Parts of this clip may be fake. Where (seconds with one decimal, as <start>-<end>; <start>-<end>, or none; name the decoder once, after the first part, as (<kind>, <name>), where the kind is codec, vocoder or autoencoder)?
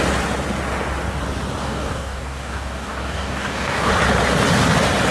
1.6-3.9 (codec, DAC)